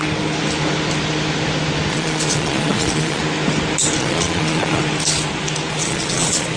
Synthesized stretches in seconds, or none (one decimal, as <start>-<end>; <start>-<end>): 1.9-3.2; 4.0-4.8; 5.7-6.6